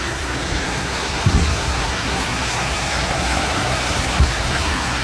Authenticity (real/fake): fake